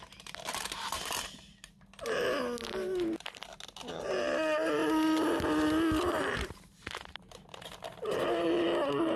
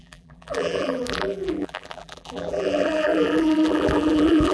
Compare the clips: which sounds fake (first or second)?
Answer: second